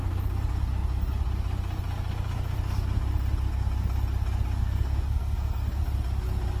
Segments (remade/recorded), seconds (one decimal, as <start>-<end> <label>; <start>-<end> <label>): 0.0-4.6 recorded; 4.6-5.8 remade; 5.8-6.6 recorded